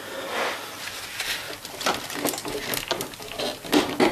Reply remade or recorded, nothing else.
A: recorded